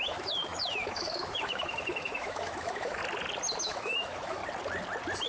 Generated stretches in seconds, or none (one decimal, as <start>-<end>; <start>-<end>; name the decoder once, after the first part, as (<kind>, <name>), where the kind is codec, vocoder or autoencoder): 0.0-3.0 (autoencoder, DAC-VAE); 3.6-4.4